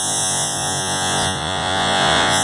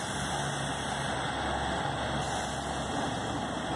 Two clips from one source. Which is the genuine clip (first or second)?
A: second